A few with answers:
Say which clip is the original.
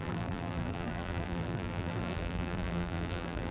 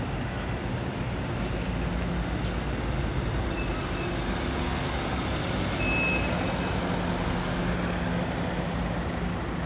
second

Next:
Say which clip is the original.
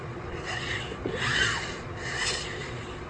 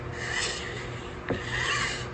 second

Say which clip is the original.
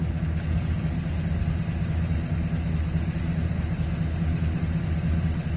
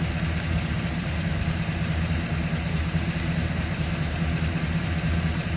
first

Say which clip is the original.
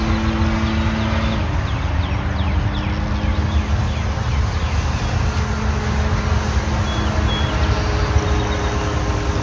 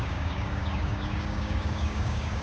first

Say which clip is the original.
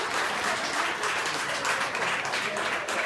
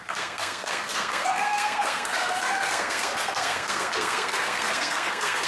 first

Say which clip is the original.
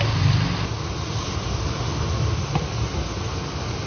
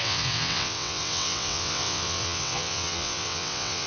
first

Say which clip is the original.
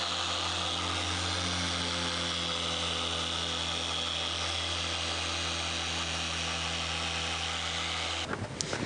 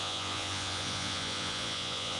first